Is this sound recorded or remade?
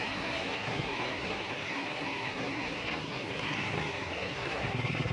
remade